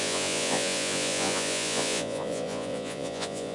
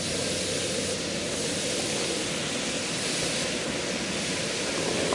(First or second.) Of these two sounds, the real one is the second